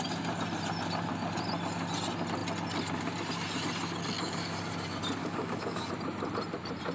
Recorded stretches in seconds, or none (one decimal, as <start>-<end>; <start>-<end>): 0.0-5.2; 5.9-6.9